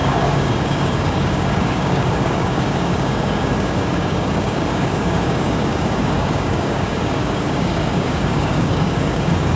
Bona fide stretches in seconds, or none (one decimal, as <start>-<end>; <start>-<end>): none